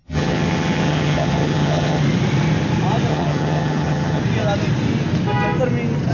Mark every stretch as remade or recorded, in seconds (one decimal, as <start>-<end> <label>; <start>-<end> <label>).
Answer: 0.0-2.0 remade; 2.0-3.1 recorded; 3.1-4.2 remade; 4.2-6.1 recorded

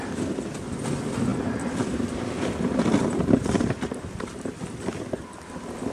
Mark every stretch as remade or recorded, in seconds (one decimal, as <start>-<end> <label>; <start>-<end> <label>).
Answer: 0.0-1.3 recorded; 1.3-4.8 remade; 4.8-5.9 recorded

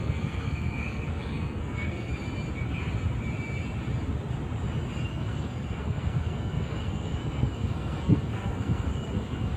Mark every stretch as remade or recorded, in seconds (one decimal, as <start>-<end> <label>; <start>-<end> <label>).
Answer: 0.0-2.1 remade; 2.1-5.1 recorded; 5.1-9.6 remade

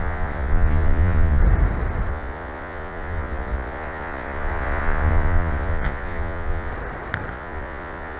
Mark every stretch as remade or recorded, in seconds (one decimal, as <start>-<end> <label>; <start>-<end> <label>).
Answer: 0.0-1.4 remade; 1.4-2.1 recorded; 2.1-6.7 remade; 6.7-7.3 recorded; 7.3-8.2 remade

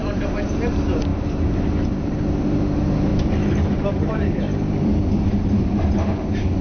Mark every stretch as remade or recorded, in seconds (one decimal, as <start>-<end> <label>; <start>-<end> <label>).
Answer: 0.0-1.1 recorded; 1.1-2.2 remade; 2.2-3.1 recorded; 3.1-6.6 remade

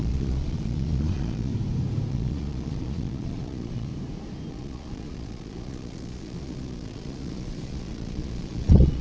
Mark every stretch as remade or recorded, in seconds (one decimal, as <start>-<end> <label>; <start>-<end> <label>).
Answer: 0.0-1.5 remade; 1.5-2.1 recorded; 2.1-3.9 remade; 3.9-4.5 recorded; 4.5-9.0 remade

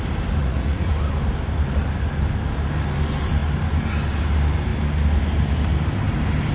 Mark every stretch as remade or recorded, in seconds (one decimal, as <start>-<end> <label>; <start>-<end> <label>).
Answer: 0.0-0.4 recorded; 0.4-0.9 remade; 0.9-6.5 recorded